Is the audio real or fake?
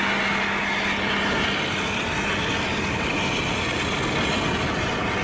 real